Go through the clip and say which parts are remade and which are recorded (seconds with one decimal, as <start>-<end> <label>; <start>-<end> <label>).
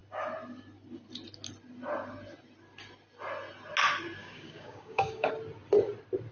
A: 0.0-4.2 recorded; 4.2-5.3 remade; 5.3-6.3 recorded